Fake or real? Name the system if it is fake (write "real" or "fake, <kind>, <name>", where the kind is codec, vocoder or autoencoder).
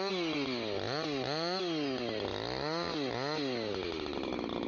real